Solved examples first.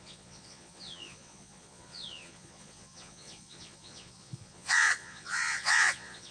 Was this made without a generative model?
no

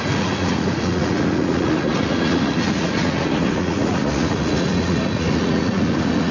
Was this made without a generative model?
no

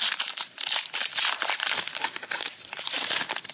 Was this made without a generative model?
yes